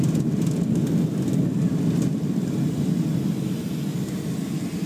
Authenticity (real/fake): real